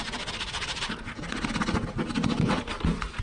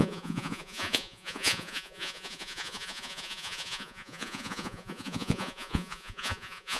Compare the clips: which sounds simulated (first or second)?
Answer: second